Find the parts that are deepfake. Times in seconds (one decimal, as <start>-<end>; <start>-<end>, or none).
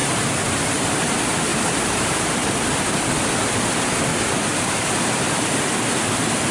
0.0-1.1; 1.5-3.1; 4.1-4.9